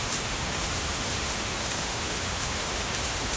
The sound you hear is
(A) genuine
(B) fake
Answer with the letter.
B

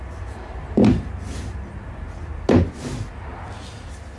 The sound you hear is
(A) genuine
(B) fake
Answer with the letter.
A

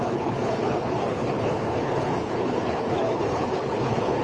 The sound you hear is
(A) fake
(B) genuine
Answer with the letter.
A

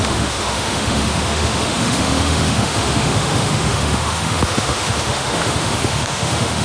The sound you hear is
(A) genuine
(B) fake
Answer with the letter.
B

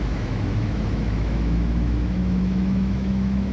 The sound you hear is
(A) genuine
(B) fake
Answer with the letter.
B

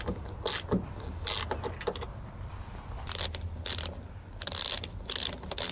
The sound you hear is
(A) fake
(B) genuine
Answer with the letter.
B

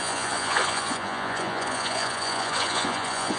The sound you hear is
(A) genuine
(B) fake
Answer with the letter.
B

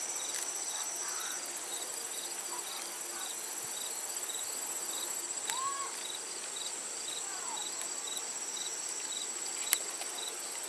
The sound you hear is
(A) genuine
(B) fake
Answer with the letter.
A